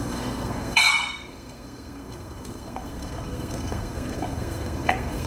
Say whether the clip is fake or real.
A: fake